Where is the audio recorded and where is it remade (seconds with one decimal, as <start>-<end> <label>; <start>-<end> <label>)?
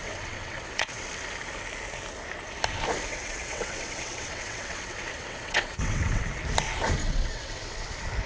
0.0-1.1 remade; 1.1-3.1 recorded; 3.1-6.2 remade; 6.2-7.0 recorded; 7.0-7.9 remade; 7.9-8.3 recorded